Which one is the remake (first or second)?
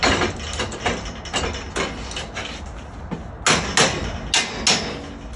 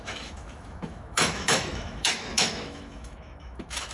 second